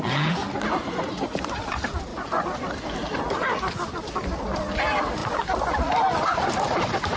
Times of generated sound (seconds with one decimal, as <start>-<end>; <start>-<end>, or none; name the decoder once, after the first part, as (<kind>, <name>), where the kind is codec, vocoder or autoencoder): none